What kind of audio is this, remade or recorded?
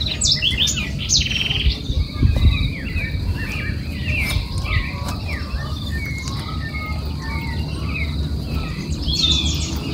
recorded